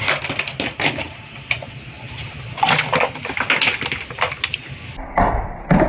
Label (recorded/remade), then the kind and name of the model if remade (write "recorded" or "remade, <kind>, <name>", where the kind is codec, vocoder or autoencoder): recorded